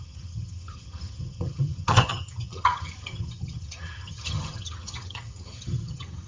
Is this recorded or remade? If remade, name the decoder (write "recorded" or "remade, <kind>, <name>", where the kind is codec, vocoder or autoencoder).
remade, vocoder, HiFi-GAN